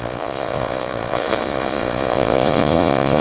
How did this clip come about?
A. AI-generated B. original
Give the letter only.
A